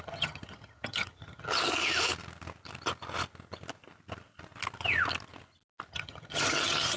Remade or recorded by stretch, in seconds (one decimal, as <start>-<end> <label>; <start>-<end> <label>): 0.0-1.7 remade; 1.7-5.9 recorded; 5.9-7.0 remade